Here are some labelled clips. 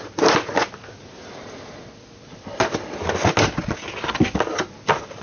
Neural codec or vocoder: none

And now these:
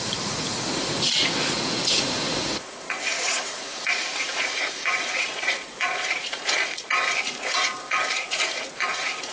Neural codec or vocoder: vocoder, Vocos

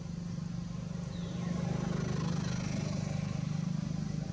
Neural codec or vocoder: none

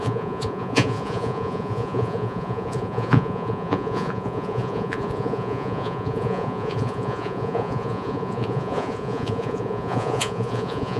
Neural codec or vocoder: vocoder, Vocos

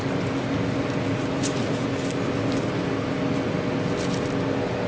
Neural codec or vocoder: none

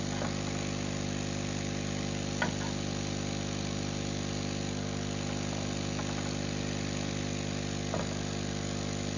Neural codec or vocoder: none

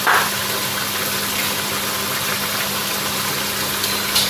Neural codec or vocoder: none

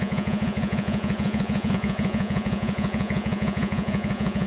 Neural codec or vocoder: vocoder, Vocos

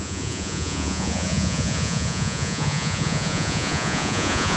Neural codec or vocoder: vocoder, Vocos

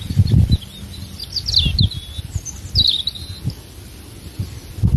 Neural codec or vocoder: none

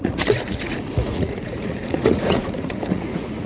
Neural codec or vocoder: vocoder, Vocos